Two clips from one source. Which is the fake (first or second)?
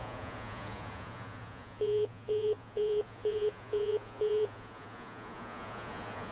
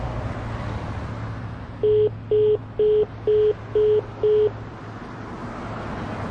first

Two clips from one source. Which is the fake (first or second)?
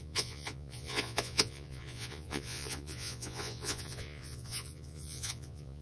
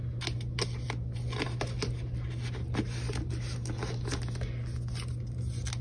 first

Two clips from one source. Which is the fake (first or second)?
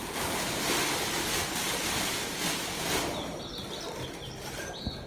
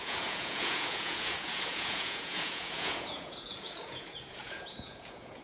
second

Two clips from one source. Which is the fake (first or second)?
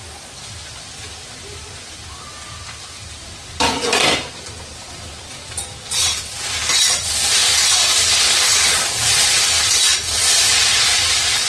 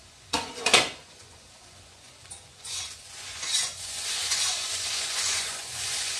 second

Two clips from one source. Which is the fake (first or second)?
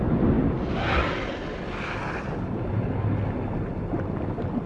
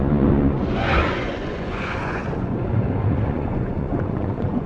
second